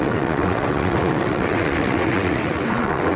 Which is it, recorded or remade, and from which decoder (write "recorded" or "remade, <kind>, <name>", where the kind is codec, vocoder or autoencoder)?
remade, vocoder, WaveNeXt